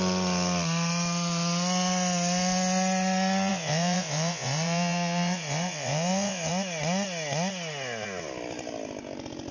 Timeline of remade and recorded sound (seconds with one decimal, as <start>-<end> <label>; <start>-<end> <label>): 0.0-3.5 recorded; 3.5-6.5 remade; 6.5-9.5 recorded